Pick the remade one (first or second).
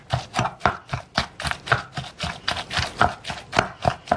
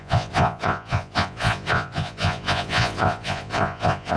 second